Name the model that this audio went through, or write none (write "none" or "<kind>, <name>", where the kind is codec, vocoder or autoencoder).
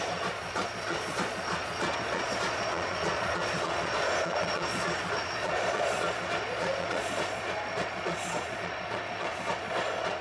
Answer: vocoder, Vocos